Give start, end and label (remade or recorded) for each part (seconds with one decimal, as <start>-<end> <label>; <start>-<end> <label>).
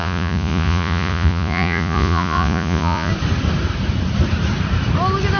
0.0-3.1 remade; 3.1-5.4 recorded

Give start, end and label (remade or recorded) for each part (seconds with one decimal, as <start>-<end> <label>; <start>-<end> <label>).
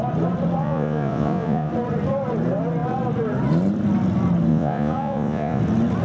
0.0-0.6 recorded; 0.6-1.7 remade; 1.7-4.5 recorded; 4.5-5.6 remade; 5.6-6.0 recorded